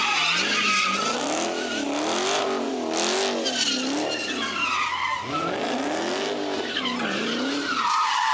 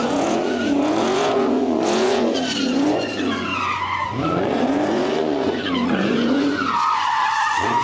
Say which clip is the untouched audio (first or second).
first